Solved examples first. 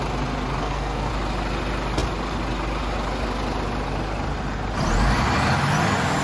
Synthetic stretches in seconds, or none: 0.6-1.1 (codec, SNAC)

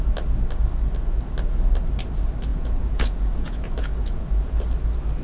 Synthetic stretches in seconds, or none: 2.5-4.6 (vocoder, Vocos)

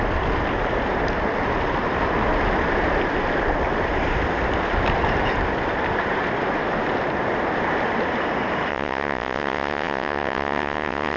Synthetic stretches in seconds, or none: 8.7-11.2 (vocoder, WaveNeXt)